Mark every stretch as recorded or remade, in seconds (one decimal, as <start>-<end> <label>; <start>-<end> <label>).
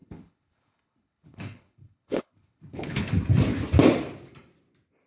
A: 0.0-3.1 remade; 3.1-5.1 recorded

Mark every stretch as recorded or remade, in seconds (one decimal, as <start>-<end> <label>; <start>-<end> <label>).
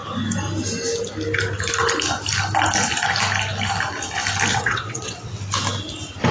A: 0.0-4.5 recorded; 4.5-5.4 remade; 5.4-6.3 recorded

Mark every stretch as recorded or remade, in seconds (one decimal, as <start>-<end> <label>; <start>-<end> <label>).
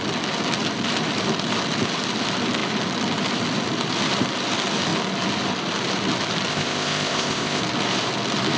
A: 0.0-6.5 recorded; 6.5-7.6 remade; 7.6-8.6 recorded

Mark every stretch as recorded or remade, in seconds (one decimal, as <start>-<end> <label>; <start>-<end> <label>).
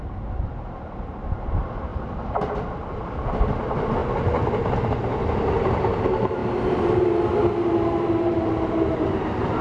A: 0.0-1.9 remade; 1.9-3.3 recorded; 3.3-4.0 remade; 4.0-5.6 recorded; 5.6-6.4 remade; 6.4-8.8 recorded; 8.8-9.6 remade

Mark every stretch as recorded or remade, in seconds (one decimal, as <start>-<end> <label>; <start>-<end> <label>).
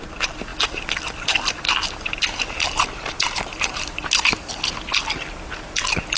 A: 0.0-3.5 recorded; 3.5-4.5 remade; 4.5-6.2 recorded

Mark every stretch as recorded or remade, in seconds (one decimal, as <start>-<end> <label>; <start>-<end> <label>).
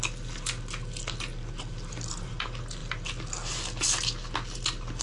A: 0.0-1.3 recorded; 1.3-2.3 remade; 2.3-5.0 recorded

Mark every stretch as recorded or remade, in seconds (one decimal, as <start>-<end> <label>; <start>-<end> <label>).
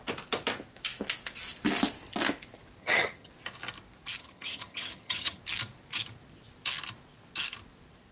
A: 0.0-2.8 recorded; 2.8-3.3 remade; 3.3-4.2 recorded; 4.2-5.4 remade; 5.4-8.1 recorded